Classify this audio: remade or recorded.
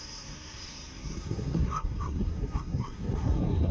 remade